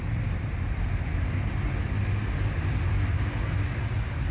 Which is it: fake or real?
real